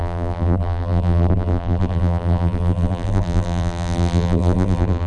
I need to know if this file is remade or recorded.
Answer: remade